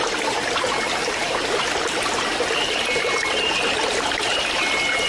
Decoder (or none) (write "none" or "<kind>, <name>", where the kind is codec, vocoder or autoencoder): none